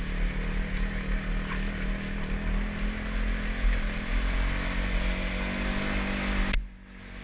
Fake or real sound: real